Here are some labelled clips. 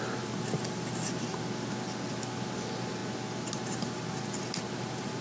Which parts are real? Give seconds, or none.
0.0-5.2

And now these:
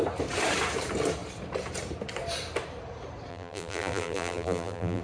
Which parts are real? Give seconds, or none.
0.0-3.3

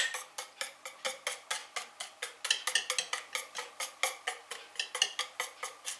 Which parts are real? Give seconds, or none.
0.0-6.0